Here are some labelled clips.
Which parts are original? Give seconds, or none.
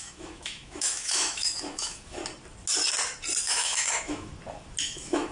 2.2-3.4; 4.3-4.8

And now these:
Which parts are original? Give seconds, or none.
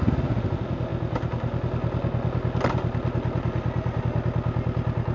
0.0-5.1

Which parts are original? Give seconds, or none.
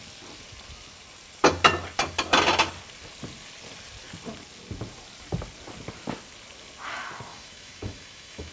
0.0-7.3